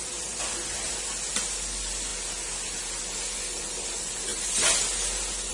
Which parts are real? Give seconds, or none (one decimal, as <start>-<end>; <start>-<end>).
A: 0.0-5.5